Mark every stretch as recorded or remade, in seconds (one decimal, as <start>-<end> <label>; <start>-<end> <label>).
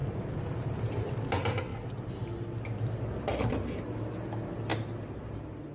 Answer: 0.0-5.7 recorded